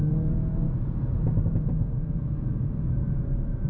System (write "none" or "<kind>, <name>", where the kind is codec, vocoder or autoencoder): vocoder, Vocos